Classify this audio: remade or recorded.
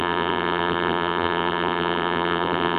remade